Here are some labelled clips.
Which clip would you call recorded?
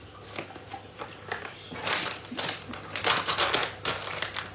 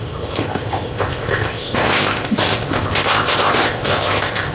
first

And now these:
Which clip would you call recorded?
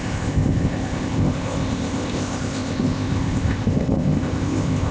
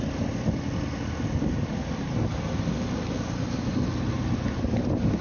second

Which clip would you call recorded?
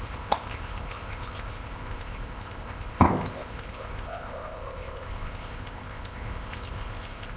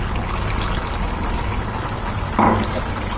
second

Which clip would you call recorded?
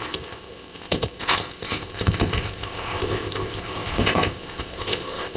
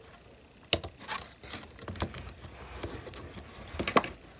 second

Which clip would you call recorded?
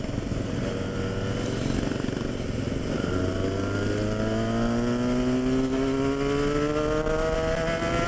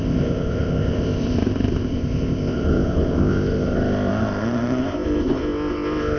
first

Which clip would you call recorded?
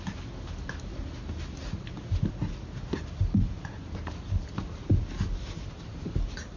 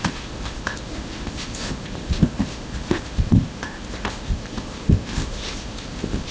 first